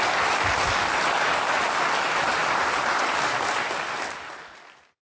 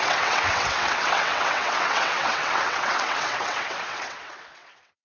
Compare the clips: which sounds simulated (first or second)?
second